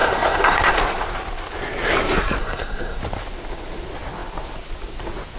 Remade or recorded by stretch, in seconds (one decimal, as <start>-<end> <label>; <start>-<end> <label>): 0.0-0.7 remade; 0.7-2.4 recorded; 2.4-3.0 remade; 3.0-5.4 recorded